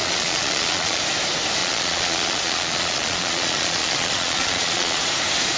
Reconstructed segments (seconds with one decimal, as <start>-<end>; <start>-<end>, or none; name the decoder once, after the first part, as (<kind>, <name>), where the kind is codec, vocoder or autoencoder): 0.0-1.0 (vocoder, Vocos); 1.6-5.0